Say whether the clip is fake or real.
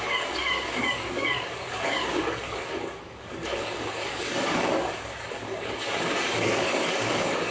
fake